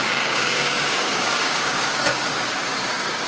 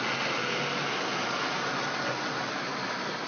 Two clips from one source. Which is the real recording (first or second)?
second